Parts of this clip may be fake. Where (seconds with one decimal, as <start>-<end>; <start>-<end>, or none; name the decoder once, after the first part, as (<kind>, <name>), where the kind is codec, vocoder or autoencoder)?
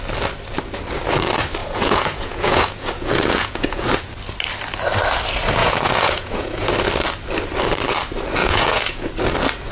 1.6-4.1 (vocoder, Vocos); 5.6-6.7; 8.4-9.1